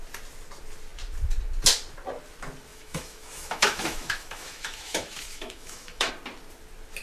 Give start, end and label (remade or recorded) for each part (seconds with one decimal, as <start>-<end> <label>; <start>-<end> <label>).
0.0-2.7 recorded; 2.7-6.1 remade; 6.1-7.0 recorded